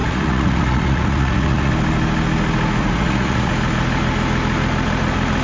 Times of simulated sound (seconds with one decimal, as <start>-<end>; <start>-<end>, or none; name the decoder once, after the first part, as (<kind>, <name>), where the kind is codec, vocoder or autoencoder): 0.0-1.7 (vocoder, Vocos); 2.8-3.5